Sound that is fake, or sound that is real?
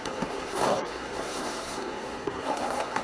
fake